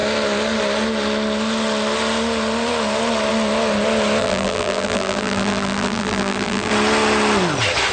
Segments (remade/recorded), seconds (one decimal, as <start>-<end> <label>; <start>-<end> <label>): 0.0-4.2 recorded; 4.2-6.7 remade; 6.7-7.9 recorded